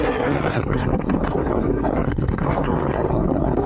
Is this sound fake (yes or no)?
yes